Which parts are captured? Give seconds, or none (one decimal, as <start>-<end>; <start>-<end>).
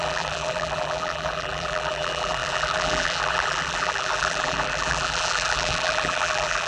none